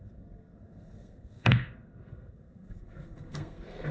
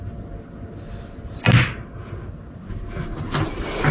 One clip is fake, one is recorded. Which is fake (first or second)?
first